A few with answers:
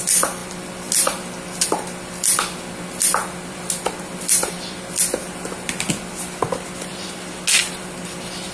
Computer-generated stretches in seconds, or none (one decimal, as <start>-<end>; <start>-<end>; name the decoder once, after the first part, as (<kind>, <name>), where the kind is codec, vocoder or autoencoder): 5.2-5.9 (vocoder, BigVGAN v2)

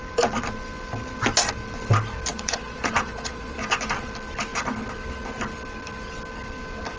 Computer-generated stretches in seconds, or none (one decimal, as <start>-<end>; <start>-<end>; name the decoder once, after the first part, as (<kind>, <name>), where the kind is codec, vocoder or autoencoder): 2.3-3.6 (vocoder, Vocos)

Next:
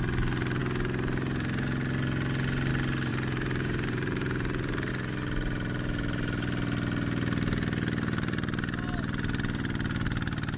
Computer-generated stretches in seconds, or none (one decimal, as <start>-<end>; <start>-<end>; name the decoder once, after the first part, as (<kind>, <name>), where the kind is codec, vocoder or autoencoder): 3.1-4.9 (vocoder, BigVGAN v2)